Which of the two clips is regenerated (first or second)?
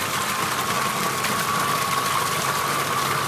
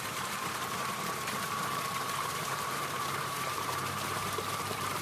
second